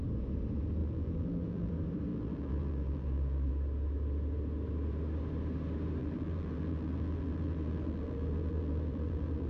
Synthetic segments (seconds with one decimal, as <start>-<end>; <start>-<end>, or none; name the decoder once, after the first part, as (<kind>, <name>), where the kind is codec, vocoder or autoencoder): 0.8-1.7 (vocoder, BigVGAN v2); 2.1-3.5; 6.0-9.5

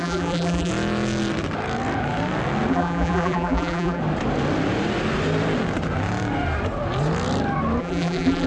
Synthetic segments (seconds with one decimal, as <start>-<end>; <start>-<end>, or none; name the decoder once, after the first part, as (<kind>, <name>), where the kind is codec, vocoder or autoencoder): 0.0-0.7 (vocoder, BigVGAN v2); 2.7-4.0; 7.8-8.5

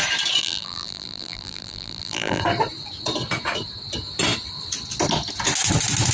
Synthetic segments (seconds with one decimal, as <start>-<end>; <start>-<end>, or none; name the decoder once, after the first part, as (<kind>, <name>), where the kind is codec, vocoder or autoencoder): 0.4-2.4 (vocoder, BigVGAN v2)

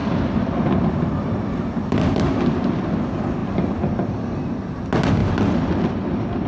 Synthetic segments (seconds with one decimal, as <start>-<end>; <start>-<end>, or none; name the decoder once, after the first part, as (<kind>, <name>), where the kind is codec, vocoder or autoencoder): 0.0-2.9 (vocoder, BigVGAN v2); 5.2-5.7

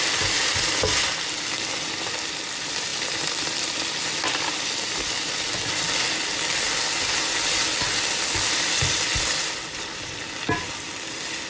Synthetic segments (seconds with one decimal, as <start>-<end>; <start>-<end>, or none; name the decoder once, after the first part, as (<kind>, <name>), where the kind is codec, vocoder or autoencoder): none

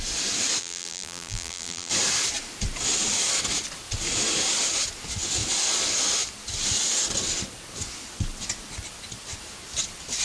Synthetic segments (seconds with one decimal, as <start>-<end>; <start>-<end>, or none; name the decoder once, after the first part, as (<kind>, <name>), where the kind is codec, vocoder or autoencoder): 0.6-1.9 (vocoder, BigVGAN v2)

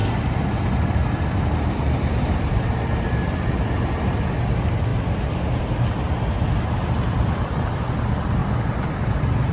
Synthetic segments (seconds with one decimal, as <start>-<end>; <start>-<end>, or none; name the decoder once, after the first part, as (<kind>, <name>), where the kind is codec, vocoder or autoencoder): 2.4-9.5 (vocoder, BigVGAN v2)